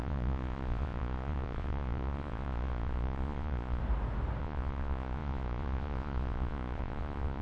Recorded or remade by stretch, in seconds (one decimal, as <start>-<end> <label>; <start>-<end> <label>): 0.0-3.8 remade; 3.8-4.4 recorded; 4.4-7.4 remade